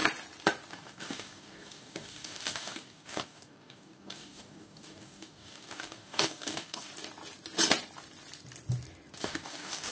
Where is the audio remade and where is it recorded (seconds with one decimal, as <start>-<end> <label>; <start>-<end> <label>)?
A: 0.0-0.7 recorded; 0.7-6.9 remade; 6.9-9.2 recorded; 9.2-9.9 remade